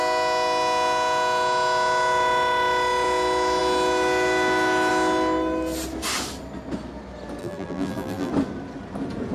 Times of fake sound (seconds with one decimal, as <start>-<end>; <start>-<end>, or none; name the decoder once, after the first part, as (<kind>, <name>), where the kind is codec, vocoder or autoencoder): 7.4-8.3 (vocoder, BigVGAN v2)